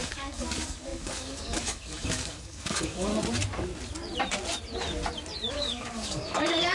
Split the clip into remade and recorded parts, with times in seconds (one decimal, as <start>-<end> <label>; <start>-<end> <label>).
0.0-3.1 remade; 3.1-5.5 recorded; 5.5-6.7 remade